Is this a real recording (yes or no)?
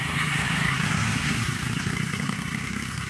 no